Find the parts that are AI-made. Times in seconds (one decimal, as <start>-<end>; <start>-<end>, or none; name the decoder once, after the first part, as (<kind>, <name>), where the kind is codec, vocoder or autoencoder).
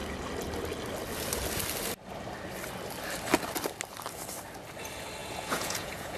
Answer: 5.2-6.2 (vocoder, Vocos)